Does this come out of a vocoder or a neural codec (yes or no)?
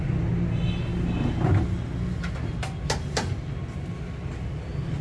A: no